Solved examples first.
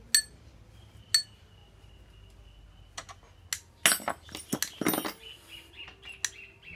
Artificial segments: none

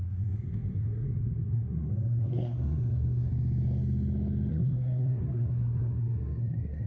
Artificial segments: 0.0-3.3 (codec, SNAC); 4.5-6.9

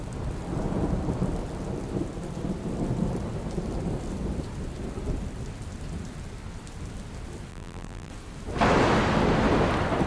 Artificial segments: 7.5-8.1 (vocoder, BigVGAN v2)